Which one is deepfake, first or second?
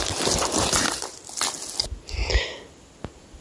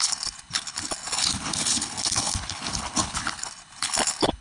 second